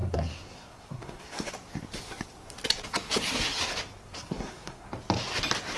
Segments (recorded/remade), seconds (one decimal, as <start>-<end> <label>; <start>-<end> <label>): 0.0-1.5 remade; 1.5-4.1 recorded; 4.1-4.9 remade; 4.9-5.8 recorded